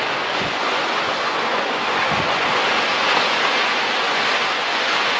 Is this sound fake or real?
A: fake